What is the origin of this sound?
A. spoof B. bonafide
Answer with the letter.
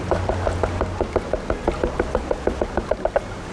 B